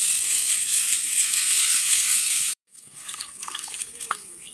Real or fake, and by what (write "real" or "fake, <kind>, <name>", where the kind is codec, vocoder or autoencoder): fake, codec, SNAC